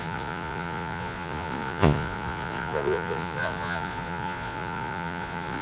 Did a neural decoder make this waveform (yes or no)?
yes